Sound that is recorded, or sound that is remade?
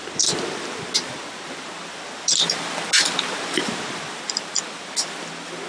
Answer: recorded